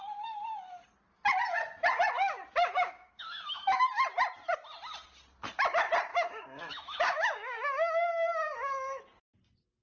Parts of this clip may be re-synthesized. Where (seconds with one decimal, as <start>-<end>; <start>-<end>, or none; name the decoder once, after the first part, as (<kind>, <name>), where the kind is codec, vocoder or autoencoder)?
2.6-3.8 (autoencoder, DAC-VAE); 6.1-9.0